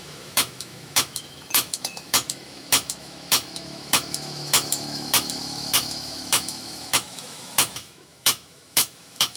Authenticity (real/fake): fake